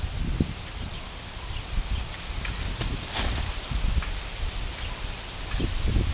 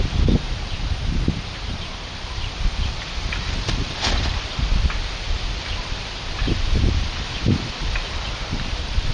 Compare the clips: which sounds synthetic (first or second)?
second